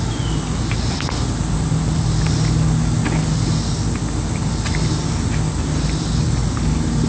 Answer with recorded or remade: recorded